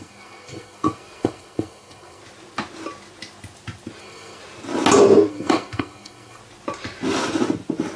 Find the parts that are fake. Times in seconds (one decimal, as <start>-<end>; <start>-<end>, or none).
0.0-2.2; 4.0-4.4; 5.3-6.4